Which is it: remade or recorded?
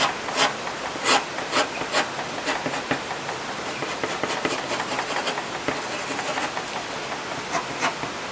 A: recorded